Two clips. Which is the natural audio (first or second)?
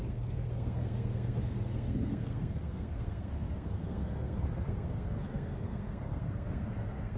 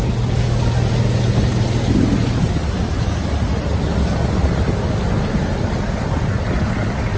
second